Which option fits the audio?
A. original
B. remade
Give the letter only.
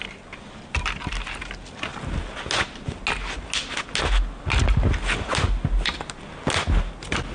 A